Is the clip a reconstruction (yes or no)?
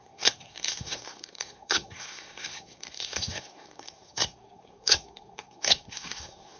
yes